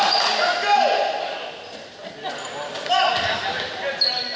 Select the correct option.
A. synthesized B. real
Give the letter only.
B